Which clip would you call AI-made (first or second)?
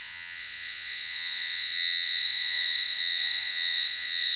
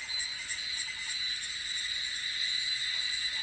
first